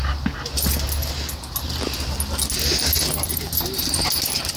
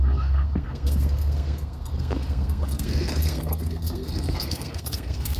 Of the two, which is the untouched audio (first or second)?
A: first